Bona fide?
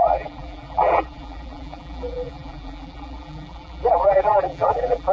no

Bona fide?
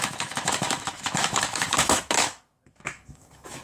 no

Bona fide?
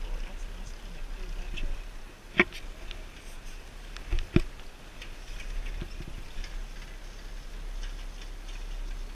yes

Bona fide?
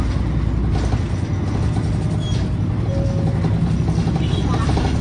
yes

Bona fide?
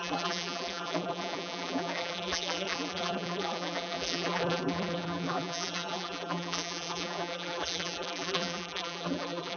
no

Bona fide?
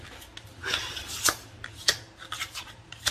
yes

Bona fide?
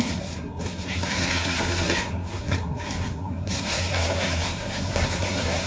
no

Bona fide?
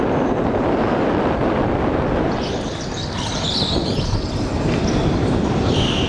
yes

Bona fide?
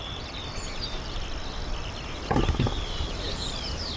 yes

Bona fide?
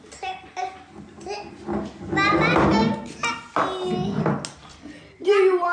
yes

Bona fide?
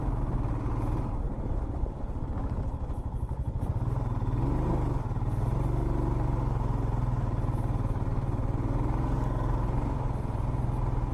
yes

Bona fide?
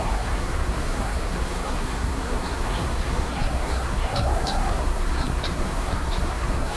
no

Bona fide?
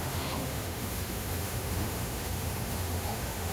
no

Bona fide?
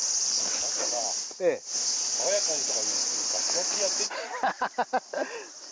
yes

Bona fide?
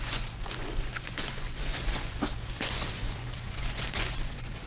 no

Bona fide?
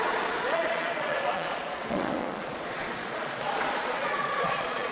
no